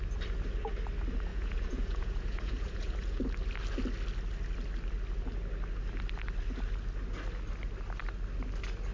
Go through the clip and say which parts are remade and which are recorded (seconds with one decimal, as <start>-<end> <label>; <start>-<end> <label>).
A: 0.0-1.3 recorded; 1.3-3.2 remade; 3.2-8.9 recorded